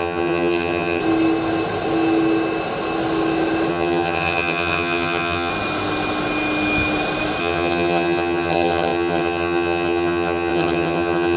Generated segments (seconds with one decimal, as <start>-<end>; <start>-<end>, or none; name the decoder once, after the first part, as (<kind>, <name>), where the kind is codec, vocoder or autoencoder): 0.0-1.0 (vocoder, HiFi-GAN); 3.7-5.5; 7.4-11.4